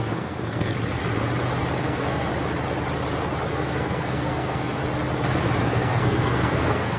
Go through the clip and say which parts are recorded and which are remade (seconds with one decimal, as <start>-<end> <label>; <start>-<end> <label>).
0.0-0.7 remade; 0.7-1.8 recorded; 1.8-2.3 remade; 2.3-3.5 recorded; 3.5-4.8 remade; 4.8-5.6 recorded; 5.6-7.0 remade